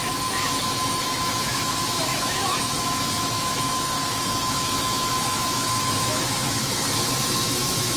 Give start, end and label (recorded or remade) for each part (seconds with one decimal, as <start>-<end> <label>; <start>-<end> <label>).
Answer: 0.0-8.0 remade